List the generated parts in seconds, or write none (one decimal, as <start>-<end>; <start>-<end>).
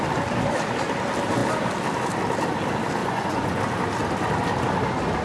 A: 3.0-3.6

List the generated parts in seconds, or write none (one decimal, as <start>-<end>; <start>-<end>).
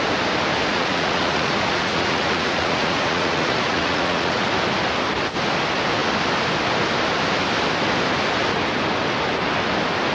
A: 0.7-4.5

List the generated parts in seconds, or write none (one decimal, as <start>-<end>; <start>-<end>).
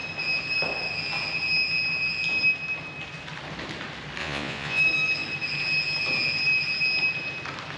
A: 4.2-4.8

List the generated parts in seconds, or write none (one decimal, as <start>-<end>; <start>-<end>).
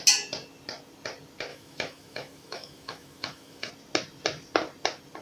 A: 1.5-3.7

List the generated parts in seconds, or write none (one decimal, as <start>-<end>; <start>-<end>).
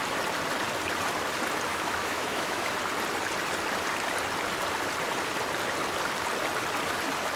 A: 1.7-2.7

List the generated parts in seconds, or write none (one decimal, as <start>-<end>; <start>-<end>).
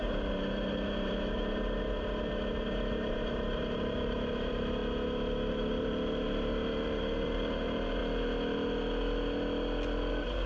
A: 0.0-4.8; 5.5-8.0; 10.1-10.5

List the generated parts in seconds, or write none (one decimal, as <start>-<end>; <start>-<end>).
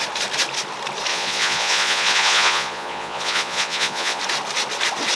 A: 1.1-4.2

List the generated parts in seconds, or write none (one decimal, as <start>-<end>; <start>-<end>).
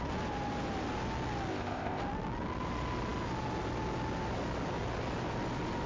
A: 1.5-2.0